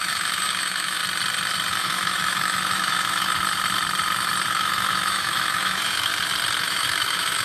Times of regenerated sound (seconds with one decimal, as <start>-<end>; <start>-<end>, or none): 0.0-1.0; 1.7-3.3; 4.5-6.1; 6.6-7.4